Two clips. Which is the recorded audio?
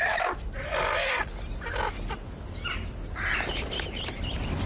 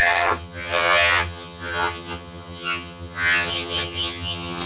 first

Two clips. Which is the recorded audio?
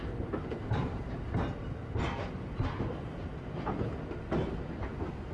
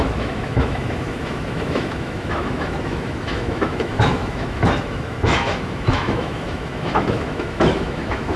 first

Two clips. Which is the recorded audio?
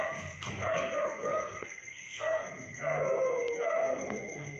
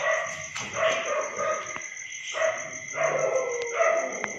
second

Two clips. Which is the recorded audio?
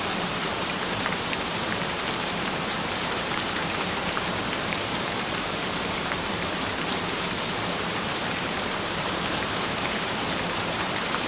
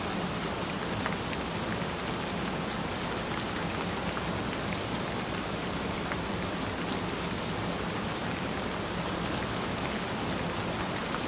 second